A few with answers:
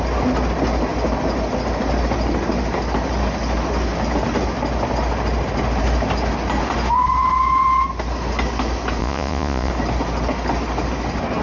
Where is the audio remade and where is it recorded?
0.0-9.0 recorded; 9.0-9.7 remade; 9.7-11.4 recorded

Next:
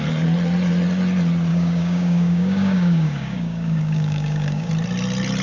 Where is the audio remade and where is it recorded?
0.0-1.5 recorded; 1.5-4.7 remade; 4.7-5.4 recorded

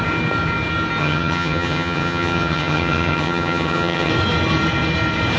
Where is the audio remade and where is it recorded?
0.0-1.0 recorded; 1.0-4.1 remade; 4.1-5.4 recorded

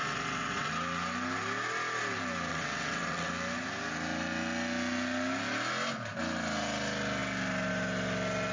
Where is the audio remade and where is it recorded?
0.0-0.7 remade; 0.7-2.5 recorded; 2.5-3.3 remade; 3.3-8.5 recorded

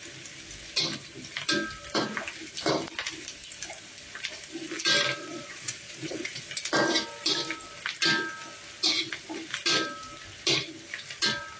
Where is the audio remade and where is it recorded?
0.0-5.2 recorded; 5.2-6.4 remade; 6.4-11.6 recorded

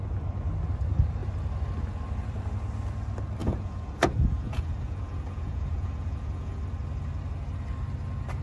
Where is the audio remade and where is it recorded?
0.0-3.4 recorded; 3.4-6.6 remade; 6.6-8.4 recorded

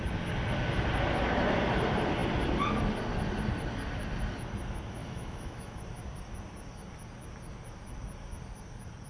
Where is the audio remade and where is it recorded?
0.0-5.0 recorded; 5.0-5.8 remade; 5.8-9.1 recorded

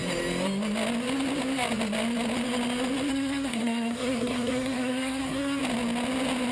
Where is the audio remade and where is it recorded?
0.0-3.1 recorded; 3.1-5.6 remade; 5.6-6.5 recorded